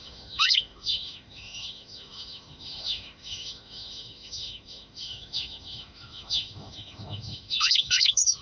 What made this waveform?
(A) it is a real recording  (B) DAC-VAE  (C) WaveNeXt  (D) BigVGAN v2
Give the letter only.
B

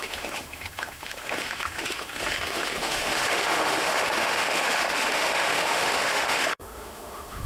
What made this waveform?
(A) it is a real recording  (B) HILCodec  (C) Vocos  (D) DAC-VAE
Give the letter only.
D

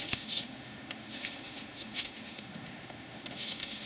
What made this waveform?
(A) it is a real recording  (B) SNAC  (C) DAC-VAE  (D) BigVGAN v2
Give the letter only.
C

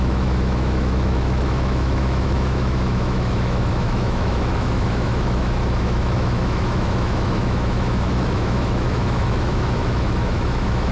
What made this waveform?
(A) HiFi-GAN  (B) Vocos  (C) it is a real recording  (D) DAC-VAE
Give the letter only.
D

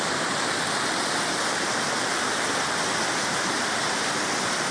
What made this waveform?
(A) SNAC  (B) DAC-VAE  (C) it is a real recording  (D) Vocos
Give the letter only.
C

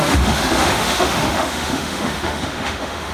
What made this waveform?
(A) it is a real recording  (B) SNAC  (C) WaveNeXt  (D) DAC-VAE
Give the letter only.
D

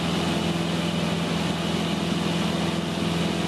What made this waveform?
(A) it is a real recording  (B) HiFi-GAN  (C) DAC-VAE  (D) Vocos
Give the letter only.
A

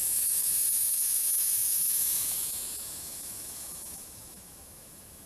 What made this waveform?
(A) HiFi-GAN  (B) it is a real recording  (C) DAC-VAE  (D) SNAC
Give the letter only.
C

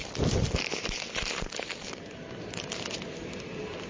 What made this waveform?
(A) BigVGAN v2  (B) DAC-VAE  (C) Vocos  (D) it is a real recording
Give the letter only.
D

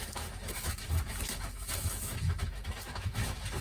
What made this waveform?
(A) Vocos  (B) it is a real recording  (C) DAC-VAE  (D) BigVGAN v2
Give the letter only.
C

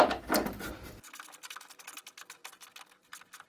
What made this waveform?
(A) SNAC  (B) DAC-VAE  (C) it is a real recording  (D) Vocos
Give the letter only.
C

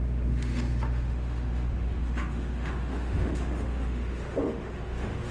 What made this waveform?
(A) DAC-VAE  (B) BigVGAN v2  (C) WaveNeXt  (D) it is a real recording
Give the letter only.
A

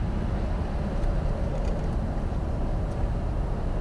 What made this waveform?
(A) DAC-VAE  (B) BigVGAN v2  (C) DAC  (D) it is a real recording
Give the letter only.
D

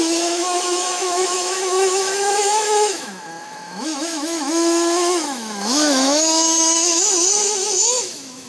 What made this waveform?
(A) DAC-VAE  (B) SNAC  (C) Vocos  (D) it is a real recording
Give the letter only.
A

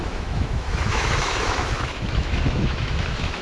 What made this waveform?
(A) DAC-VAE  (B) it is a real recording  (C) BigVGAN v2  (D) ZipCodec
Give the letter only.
A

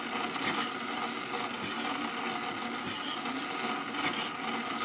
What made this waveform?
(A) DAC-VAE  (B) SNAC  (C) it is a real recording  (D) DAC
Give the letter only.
C